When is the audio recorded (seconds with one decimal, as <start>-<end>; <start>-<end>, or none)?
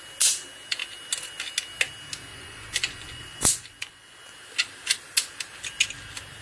0.0-2.3; 4.2-6.4